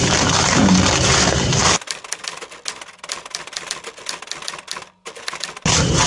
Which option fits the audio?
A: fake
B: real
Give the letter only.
B